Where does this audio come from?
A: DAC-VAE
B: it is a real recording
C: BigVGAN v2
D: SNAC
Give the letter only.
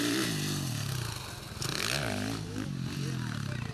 B